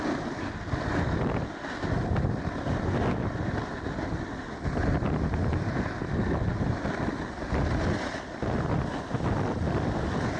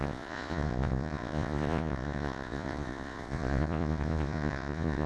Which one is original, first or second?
first